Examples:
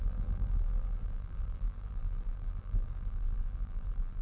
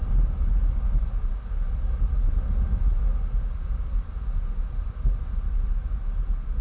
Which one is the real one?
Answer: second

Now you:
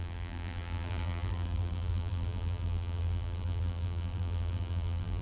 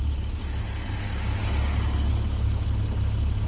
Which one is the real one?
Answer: second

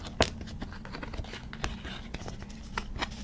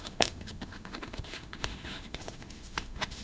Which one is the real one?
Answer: first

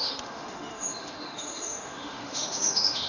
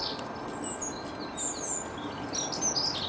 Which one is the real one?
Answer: second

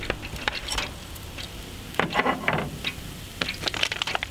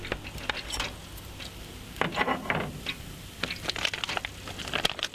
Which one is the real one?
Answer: second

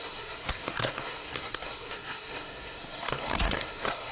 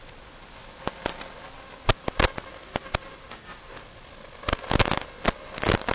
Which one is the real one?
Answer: second